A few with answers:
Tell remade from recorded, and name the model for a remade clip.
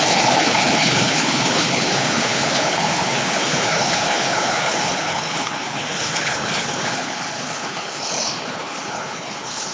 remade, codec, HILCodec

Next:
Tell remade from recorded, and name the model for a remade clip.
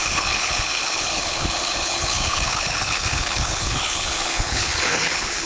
remade, codec, HILCodec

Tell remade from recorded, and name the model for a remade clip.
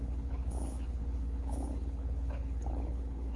remade, codec, HILCodec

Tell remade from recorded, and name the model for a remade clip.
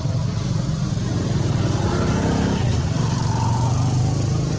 recorded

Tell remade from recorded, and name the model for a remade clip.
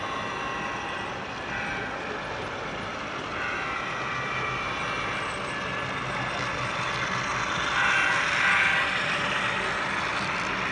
recorded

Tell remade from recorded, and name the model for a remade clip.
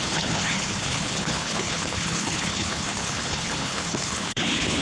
remade, codec, HILCodec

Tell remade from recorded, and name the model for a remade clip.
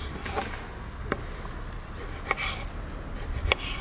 recorded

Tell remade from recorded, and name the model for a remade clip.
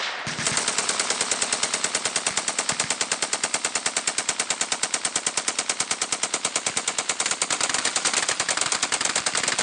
recorded